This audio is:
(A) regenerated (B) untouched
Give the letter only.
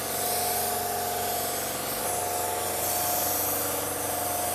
B